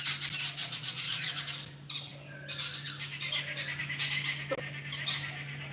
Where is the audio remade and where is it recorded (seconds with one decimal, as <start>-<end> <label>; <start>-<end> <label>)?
0.0-0.6 recorded; 0.6-1.3 remade; 1.3-5.7 recorded